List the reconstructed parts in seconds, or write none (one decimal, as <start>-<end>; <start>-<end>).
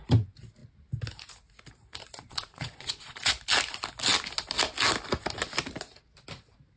2.0-3.3